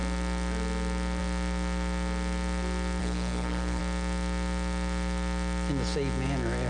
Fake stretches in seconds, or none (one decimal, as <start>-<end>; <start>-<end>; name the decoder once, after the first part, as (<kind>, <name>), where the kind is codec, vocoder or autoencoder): 3.0-3.8 (codec, SNAC)

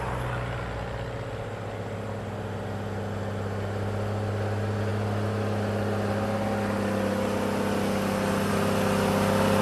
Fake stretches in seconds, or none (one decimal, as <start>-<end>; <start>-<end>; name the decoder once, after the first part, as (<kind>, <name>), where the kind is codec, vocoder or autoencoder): none